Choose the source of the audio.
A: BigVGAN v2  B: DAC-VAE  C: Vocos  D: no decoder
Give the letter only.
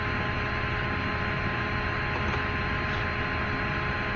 D